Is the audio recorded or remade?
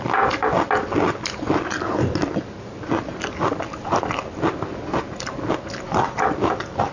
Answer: recorded